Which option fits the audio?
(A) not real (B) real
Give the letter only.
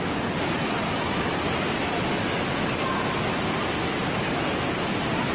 B